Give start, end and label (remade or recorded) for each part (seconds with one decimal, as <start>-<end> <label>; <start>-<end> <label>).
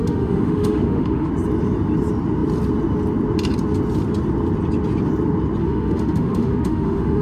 0.0-1.3 remade; 1.3-5.6 recorded; 5.6-7.2 remade